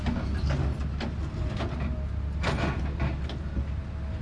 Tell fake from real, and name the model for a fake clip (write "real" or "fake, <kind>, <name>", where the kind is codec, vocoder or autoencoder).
real